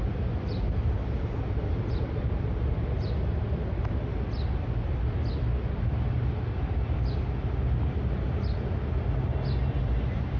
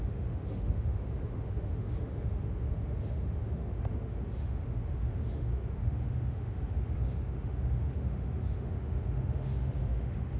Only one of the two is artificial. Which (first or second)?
second